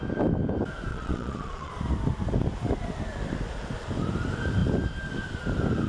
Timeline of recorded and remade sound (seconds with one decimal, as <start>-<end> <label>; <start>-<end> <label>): 0.0-0.9 recorded; 0.9-1.7 remade; 1.7-5.9 recorded